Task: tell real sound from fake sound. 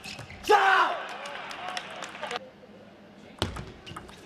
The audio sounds real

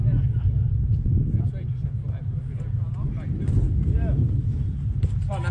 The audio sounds real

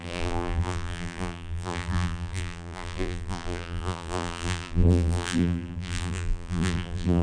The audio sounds fake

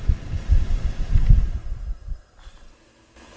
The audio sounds real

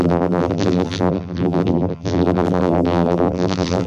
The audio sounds fake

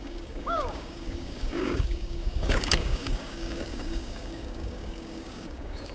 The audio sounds fake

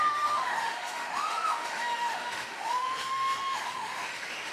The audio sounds fake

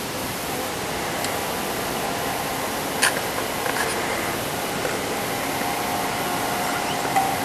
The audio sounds real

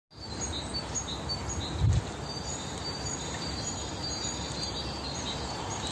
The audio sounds real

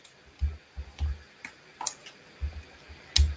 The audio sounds real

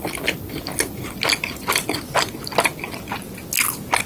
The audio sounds real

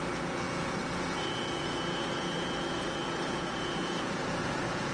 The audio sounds fake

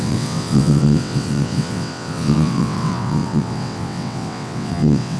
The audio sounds fake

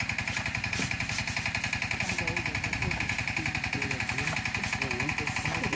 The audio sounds real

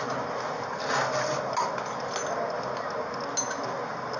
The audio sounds real